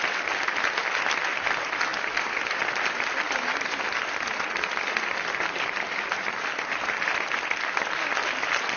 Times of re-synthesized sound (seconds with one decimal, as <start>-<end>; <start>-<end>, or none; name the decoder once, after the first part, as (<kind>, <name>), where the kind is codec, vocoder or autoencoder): none